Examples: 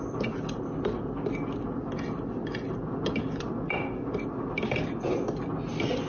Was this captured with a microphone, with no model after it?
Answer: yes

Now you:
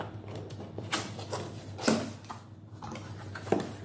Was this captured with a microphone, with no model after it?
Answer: yes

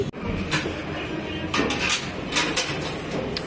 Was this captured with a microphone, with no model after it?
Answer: yes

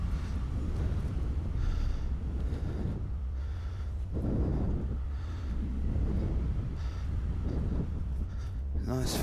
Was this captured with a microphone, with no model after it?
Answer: yes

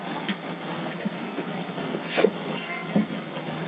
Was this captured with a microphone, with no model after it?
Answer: no